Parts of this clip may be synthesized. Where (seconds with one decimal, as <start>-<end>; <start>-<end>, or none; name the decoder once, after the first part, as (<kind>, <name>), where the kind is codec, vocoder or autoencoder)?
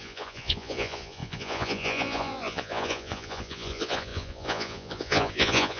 0.0-5.8 (vocoder, Vocos)